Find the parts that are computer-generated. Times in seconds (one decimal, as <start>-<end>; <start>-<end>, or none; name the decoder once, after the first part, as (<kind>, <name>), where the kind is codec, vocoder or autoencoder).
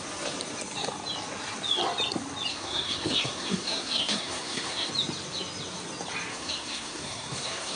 2.5-4.9 (codec, SNAC); 6.3-7.8